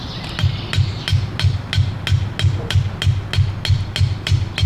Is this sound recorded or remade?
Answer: recorded